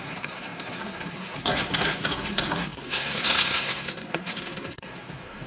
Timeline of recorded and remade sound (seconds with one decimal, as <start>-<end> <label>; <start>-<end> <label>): 0.0-5.5 remade